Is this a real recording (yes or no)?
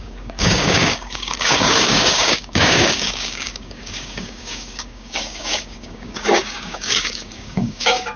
no